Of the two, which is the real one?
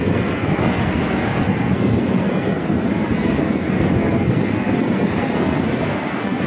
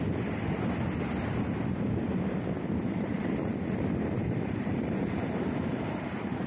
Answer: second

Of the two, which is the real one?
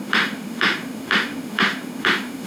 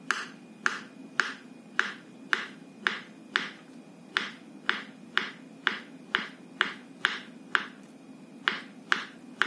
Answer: second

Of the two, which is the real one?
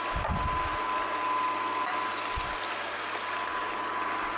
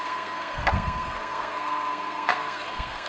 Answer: first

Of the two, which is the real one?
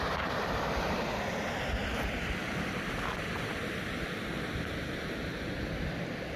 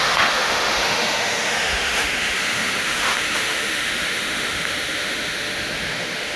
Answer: first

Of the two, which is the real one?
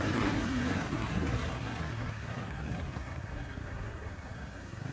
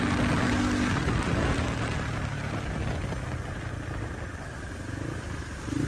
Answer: second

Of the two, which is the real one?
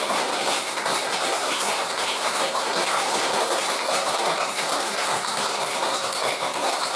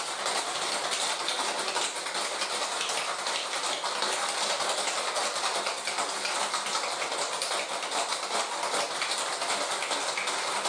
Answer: second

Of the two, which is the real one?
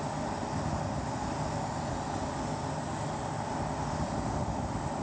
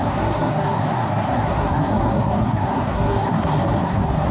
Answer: first